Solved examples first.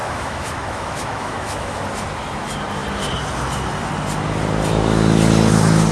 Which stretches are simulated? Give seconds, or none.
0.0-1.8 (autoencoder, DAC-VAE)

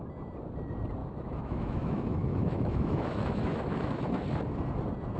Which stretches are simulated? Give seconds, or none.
1.0-4.1 (autoencoder, DAC-VAE)

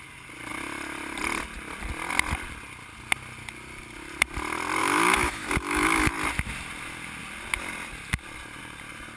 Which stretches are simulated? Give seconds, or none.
4.8-6.1 (autoencoder, DAC-VAE)

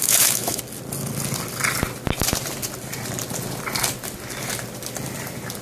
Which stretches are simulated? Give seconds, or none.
0.0-0.6 (autoencoder, DAC-VAE)

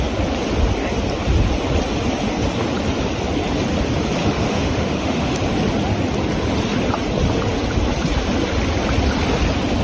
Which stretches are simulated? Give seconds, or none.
4.2-5.4 (autoencoder, DAC-VAE)

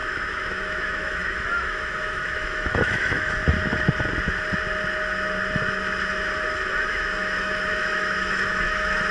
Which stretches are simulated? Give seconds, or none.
0.0-3.4 (autoencoder, DAC-VAE); 6.9-9.1